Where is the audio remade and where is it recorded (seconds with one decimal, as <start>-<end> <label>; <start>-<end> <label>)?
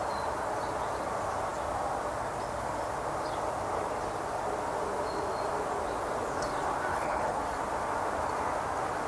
0.0-6.9 recorded; 6.9-7.4 remade; 7.4-9.1 recorded